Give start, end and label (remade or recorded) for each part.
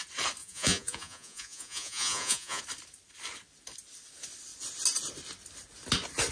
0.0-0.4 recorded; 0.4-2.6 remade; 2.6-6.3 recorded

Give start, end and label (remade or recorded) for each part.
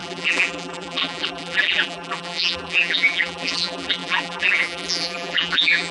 0.0-5.9 remade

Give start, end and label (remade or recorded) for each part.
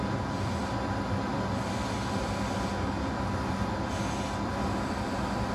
0.0-5.5 recorded